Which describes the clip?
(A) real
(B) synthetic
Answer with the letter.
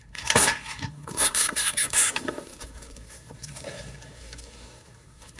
B